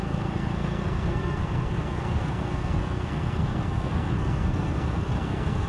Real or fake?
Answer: fake